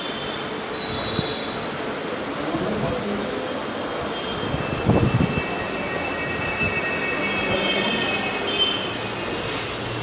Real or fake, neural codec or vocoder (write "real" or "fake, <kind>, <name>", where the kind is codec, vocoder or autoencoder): real